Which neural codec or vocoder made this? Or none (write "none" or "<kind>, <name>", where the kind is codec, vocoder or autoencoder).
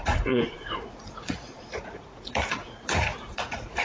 vocoder, Vocos